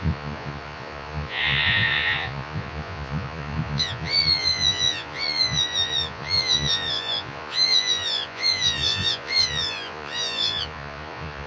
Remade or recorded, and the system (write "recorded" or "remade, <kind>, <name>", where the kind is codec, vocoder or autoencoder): remade, vocoder, Vocos